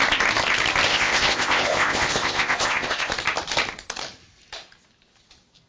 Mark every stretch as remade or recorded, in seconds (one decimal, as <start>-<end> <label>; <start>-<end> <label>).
0.0-0.9 recorded; 0.9-3.1 remade; 3.1-5.7 recorded